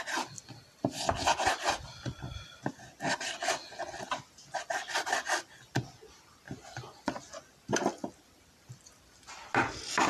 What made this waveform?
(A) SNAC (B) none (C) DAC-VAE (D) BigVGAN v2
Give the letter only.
B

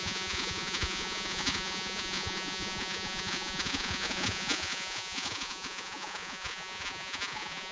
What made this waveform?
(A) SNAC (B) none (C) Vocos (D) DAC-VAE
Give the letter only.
C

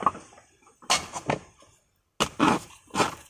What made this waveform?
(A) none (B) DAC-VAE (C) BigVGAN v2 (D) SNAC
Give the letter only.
A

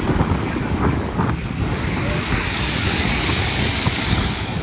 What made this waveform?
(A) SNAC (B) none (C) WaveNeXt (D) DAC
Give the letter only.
D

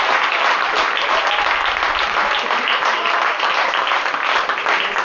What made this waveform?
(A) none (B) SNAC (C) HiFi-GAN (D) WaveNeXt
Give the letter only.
A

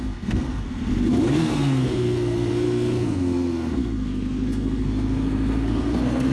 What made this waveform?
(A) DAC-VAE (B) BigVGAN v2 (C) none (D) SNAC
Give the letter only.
D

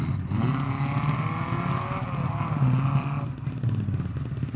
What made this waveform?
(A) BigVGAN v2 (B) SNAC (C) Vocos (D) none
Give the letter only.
D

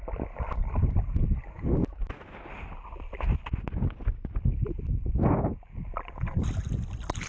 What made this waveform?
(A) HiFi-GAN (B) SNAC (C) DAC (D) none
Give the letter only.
D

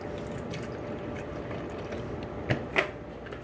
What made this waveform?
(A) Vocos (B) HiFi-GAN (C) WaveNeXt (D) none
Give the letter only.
D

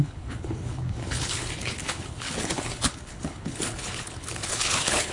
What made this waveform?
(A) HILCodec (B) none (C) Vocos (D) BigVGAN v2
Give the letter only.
A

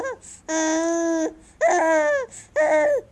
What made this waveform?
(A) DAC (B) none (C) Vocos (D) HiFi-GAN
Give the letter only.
B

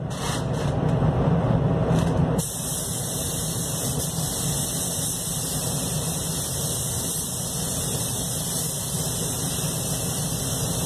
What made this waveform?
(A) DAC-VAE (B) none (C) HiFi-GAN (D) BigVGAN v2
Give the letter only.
D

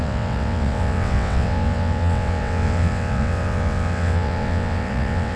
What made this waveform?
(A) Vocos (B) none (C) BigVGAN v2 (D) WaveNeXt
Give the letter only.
D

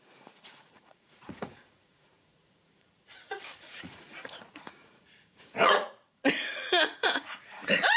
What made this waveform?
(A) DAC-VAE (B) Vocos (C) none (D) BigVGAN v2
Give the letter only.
B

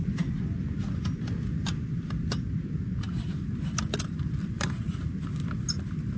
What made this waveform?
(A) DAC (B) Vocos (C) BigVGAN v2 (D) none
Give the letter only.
D